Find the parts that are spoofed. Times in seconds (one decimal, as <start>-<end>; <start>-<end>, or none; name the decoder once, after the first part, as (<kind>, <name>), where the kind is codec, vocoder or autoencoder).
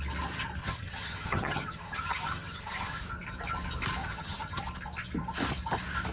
0.6-3.0 (vocoder, HiFi-GAN); 4.0-4.6